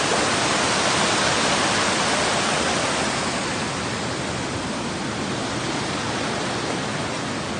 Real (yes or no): yes